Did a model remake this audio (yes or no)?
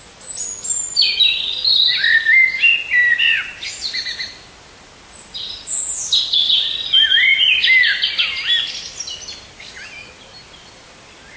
no